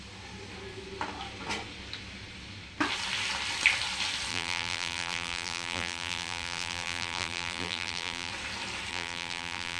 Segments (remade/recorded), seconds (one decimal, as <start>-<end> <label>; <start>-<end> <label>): 0.0-4.3 recorded; 4.3-8.3 remade; 8.3-8.9 recorded; 8.9-9.8 remade